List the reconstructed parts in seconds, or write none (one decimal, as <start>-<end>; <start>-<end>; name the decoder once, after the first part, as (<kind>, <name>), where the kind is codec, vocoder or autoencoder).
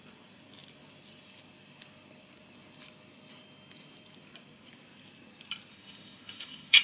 5.7-6.8 (autoencoder, DAC-VAE)